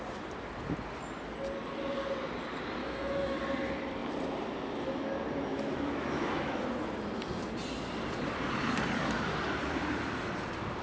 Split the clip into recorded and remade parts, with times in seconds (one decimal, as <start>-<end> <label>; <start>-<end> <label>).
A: 0.0-2.8 recorded; 2.8-3.4 remade; 3.4-5.5 recorded; 5.5-6.6 remade; 6.6-10.8 recorded